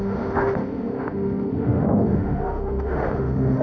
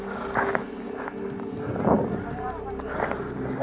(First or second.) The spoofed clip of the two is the first